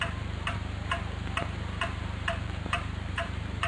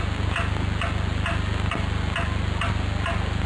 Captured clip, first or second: second